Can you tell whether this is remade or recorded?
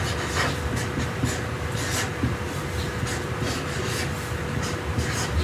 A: recorded